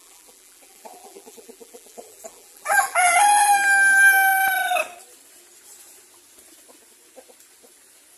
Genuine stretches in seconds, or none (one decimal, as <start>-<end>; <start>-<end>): 3.2-8.2